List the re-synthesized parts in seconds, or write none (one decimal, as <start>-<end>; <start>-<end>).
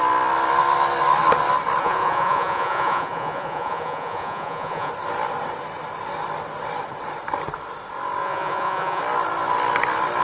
1.8-4.9; 8.2-9.0